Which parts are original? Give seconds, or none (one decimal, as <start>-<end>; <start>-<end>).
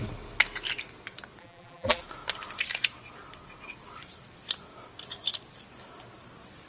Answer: 0.0-1.4; 2.0-6.7